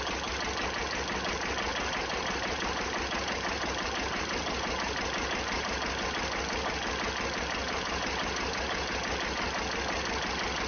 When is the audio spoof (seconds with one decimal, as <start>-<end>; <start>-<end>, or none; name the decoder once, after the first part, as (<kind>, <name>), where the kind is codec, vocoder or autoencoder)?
1.7-6.0 (vocoder, BigVGAN v2); 7.6-9.0